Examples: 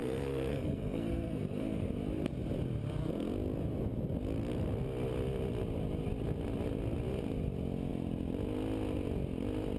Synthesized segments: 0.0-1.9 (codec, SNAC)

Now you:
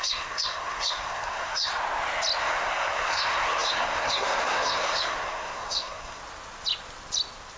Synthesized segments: 0.0-1.7 (codec, SNAC); 2.4-6.2

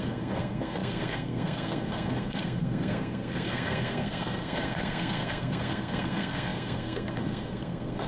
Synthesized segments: 0.0-8.1 (codec, SNAC)

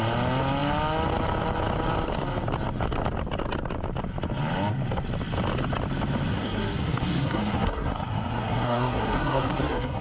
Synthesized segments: 6.3-10.0 (codec, SNAC)

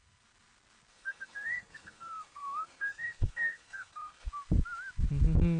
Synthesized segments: 0.9-4.3 (codec, SNAC)

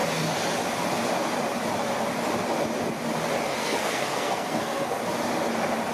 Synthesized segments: 3.6-5.0 (codec, SNAC)

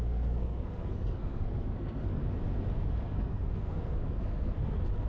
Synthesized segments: 0.0-2.2 (codec, SNAC); 2.8-5.1

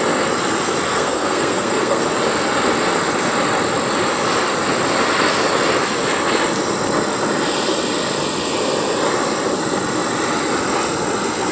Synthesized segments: 0.9-2.0 (codec, SNAC)